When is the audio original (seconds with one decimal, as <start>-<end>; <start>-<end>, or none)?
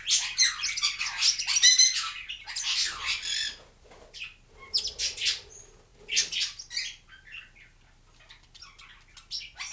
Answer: 0.0-9.7